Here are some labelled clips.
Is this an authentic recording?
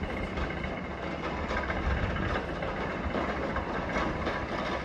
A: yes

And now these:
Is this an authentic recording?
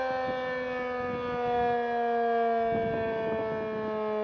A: yes